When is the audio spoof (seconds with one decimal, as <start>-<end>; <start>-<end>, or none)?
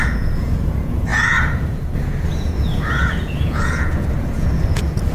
0.0-5.1